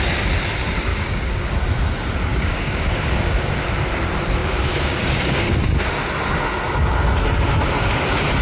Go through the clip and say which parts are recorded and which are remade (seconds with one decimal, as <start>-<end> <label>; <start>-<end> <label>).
0.0-0.9 recorded; 0.9-1.5 remade; 1.5-2.3 recorded; 2.3-2.9 remade; 2.9-4.4 recorded; 4.4-5.5 remade; 5.5-8.4 recorded